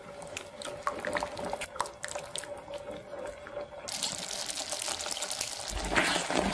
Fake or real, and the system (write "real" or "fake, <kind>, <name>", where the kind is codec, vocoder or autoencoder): real